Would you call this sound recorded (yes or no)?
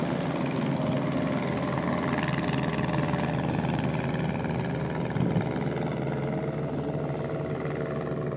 yes